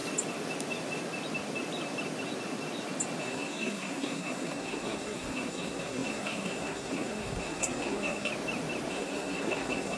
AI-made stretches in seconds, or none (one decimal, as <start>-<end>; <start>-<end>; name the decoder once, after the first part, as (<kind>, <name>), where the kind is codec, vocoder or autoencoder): 3.2-8.3 (codec, SNAC); 8.9-10.0